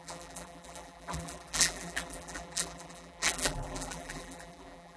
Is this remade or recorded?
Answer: remade